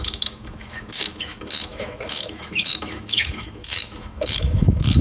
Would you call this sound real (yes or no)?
no